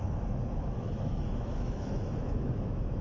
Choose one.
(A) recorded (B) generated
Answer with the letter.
B